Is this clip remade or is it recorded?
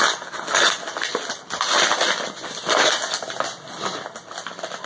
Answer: recorded